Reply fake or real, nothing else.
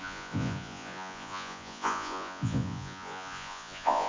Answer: fake